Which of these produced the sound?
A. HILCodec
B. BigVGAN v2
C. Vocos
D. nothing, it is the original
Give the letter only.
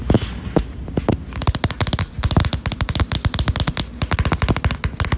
D